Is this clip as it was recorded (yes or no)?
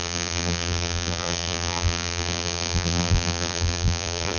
no